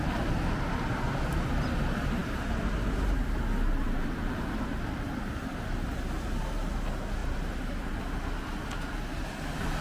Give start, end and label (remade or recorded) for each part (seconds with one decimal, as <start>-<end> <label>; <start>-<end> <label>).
0.0-7.2 recorded; 7.2-8.0 remade; 8.0-9.8 recorded